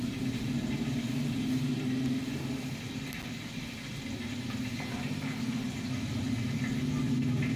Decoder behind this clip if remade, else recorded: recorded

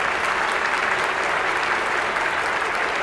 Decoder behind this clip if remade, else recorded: recorded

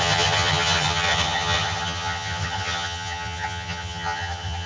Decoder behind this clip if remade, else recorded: remade, vocoder, HiFi-GAN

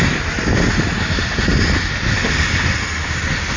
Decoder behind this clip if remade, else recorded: recorded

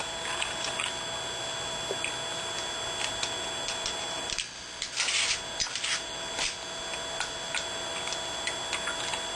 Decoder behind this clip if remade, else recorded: recorded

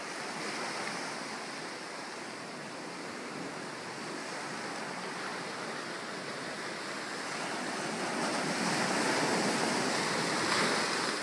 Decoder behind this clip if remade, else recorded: recorded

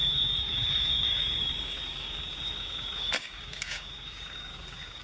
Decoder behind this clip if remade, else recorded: remade, codec, DAC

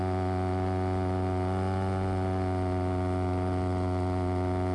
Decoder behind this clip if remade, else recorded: recorded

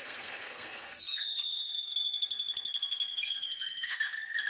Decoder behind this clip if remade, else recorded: remade, codec, SNAC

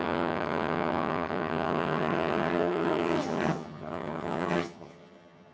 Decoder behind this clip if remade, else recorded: remade, vocoder, HiFi-GAN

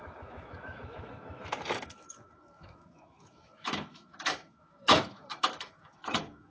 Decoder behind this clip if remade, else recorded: remade, autoencoder, DAC-VAE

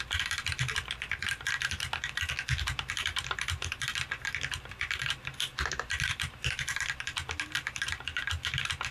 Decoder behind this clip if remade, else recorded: recorded